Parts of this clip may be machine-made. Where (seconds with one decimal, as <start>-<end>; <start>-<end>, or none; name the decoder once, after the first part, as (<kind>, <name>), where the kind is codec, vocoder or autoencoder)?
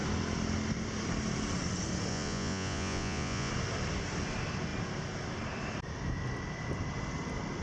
2.1-3.5 (vocoder, Vocos)